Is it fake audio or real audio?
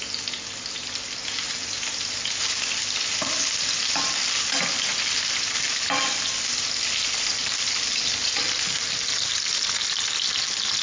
real